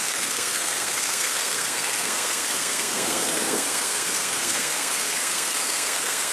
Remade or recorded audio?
remade